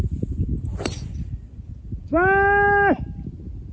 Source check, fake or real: real